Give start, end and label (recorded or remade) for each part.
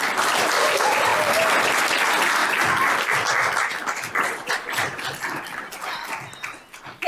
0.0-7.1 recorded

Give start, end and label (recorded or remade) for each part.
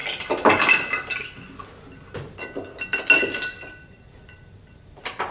0.0-5.3 recorded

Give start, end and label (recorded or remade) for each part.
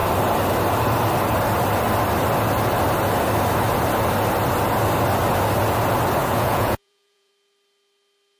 0.0-6.2 recorded; 6.2-7.3 remade; 7.3-8.4 recorded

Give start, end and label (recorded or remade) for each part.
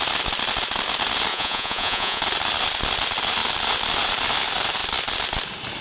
0.0-1.3 recorded; 1.3-2.2 remade; 2.2-5.8 recorded